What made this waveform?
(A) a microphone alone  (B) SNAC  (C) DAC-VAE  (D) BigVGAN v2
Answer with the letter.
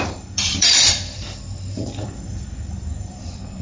D